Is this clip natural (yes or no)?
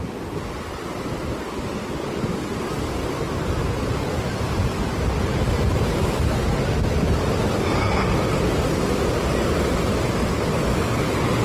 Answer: yes